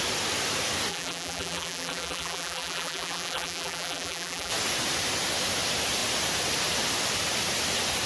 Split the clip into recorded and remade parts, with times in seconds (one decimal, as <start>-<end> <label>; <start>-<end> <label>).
0.0-0.9 recorded; 0.9-4.5 remade; 4.5-8.1 recorded